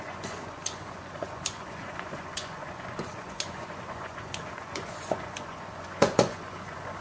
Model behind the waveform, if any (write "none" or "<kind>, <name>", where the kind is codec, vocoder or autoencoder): vocoder, Vocos